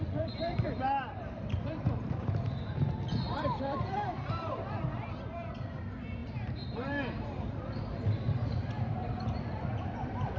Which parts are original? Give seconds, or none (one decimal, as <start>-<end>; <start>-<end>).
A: none